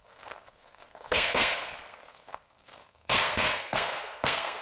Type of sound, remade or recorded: remade